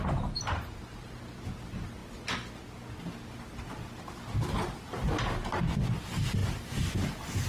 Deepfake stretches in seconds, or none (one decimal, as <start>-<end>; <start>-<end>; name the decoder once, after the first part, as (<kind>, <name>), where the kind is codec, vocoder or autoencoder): none